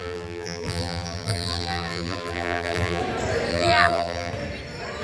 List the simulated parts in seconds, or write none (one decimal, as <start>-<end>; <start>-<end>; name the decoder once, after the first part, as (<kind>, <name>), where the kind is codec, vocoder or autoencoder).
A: 0.0-3.0 (vocoder, BigVGAN v2); 3.5-4.3

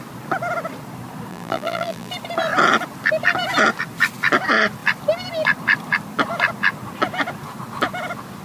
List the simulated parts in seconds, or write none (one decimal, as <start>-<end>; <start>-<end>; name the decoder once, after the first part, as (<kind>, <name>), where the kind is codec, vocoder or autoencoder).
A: 1.3-2.1 (vocoder, BigVGAN v2)

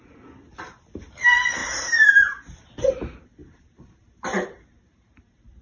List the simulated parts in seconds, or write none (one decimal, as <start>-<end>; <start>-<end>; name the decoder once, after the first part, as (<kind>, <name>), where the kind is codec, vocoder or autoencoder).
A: 1.6-2.4 (vocoder, BigVGAN v2); 3.4-5.6